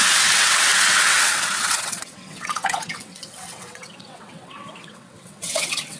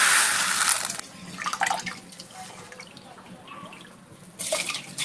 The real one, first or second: second